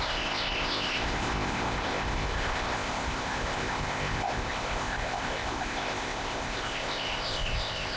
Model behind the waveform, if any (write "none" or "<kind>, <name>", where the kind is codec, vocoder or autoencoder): codec, ZipCodec